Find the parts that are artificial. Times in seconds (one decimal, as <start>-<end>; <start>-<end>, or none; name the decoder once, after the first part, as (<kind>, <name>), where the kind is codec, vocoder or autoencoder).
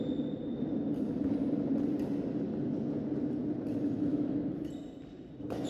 4.1-4.7 (autoencoder, DAC-VAE)